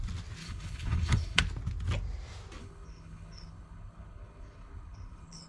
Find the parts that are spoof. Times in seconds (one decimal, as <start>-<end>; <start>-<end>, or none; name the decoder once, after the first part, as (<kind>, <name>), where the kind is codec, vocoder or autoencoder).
0.4-1.4 (codec, HILCodec); 2.6-5.5